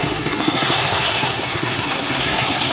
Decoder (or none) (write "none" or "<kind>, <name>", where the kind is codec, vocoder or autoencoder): codec, SNAC